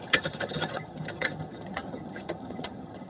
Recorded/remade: remade